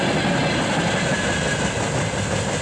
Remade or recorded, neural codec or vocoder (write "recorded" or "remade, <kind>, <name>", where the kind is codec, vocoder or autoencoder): recorded